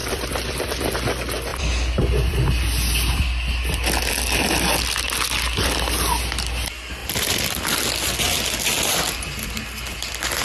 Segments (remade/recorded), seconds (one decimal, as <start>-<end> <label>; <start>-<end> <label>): 0.0-0.9 remade; 0.9-1.5 recorded; 1.5-4.1 remade; 4.1-7.0 recorded; 7.0-7.8 remade; 7.8-10.4 recorded